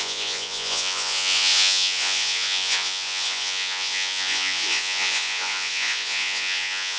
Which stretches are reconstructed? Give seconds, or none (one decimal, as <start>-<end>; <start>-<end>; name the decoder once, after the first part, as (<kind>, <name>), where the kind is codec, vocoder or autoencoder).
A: 0.0-7.0 (vocoder, Vocos)